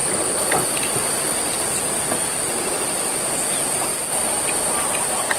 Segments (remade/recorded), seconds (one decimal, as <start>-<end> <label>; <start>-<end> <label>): 0.0-3.2 remade; 3.2-5.4 recorded